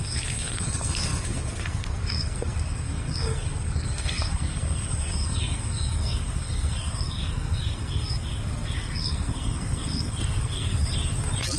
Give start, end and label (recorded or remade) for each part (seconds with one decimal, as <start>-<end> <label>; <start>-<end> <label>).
0.0-10.8 remade; 10.8-11.6 recorded